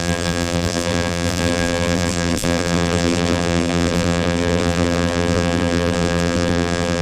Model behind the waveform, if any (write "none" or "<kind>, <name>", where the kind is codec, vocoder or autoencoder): vocoder, BigVGAN v2